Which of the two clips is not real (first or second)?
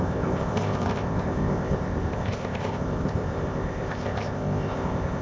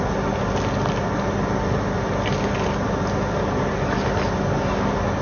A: first